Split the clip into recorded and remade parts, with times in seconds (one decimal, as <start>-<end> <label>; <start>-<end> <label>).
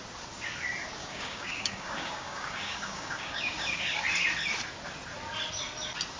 0.0-1.0 recorded; 1.0-4.0 remade; 4.0-6.2 recorded